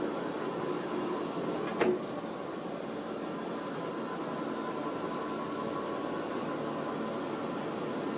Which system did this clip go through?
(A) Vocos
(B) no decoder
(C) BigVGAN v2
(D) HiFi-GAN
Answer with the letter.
B